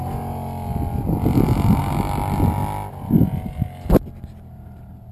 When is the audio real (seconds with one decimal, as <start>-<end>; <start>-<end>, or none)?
0.0-5.1